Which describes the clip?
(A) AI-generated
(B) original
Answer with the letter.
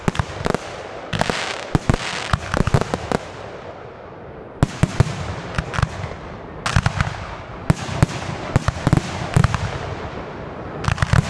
B